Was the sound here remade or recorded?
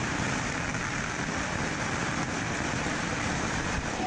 remade